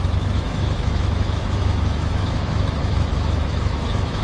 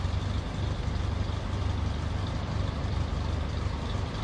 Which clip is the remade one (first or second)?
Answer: first